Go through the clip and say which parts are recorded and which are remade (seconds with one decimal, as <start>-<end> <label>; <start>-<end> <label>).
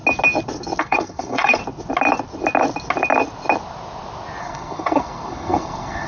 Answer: 0.0-0.8 recorded; 0.8-1.6 remade; 1.6-4.4 recorded; 4.4-6.1 remade